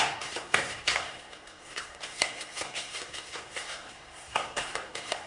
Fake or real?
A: fake